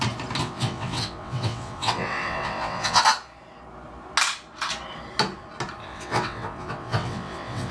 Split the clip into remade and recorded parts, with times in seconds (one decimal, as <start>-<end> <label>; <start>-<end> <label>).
0.0-0.4 recorded; 0.4-3.0 remade; 3.0-5.8 recorded; 5.8-7.7 remade